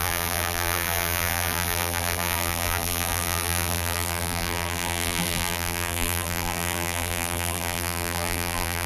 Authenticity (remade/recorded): remade